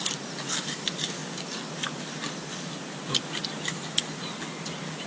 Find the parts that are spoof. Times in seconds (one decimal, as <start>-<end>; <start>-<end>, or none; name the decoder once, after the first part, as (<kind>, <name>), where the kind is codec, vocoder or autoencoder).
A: none